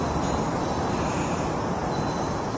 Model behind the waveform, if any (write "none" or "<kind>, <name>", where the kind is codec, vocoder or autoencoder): vocoder, BigVGAN v2